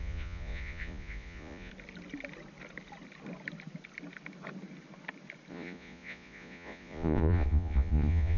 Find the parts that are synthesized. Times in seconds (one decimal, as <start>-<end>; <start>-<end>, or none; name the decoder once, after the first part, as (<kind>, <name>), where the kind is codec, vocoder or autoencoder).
0.0-1.7 (vocoder, Vocos); 5.5-8.4